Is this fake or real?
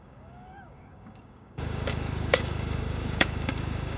fake